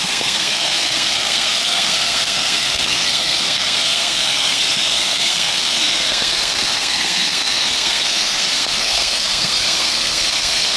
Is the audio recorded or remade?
remade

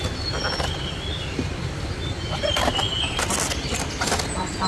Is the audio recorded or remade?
recorded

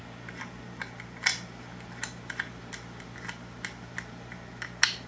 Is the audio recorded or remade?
recorded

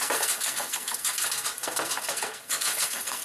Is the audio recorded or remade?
remade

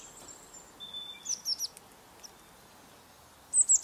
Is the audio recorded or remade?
recorded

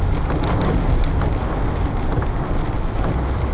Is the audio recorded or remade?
recorded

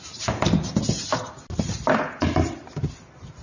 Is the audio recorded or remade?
recorded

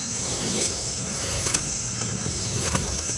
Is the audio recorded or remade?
remade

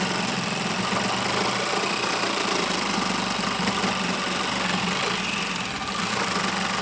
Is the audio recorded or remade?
recorded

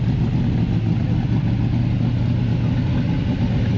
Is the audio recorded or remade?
recorded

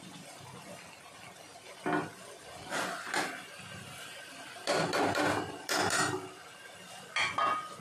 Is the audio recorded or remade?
recorded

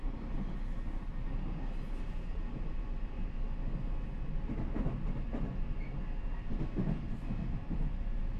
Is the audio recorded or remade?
recorded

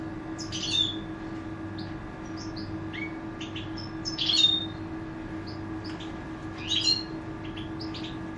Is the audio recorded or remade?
recorded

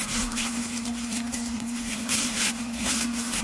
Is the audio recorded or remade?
remade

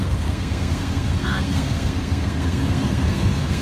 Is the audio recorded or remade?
remade